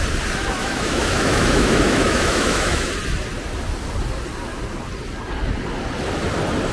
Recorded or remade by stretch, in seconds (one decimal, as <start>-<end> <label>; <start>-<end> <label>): 0.0-0.6 recorded; 0.6-2.9 remade; 2.9-6.7 recorded